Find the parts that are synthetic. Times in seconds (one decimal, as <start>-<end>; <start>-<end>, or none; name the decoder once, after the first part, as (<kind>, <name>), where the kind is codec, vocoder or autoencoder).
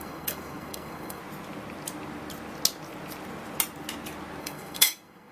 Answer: 0.0-1.2 (codec, SNAC); 4.4-5.3